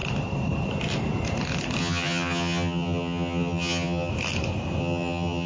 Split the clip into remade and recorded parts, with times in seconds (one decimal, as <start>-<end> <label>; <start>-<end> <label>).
0.0-1.8 recorded; 1.8-4.1 remade; 4.1-4.8 recorded; 4.8-5.5 remade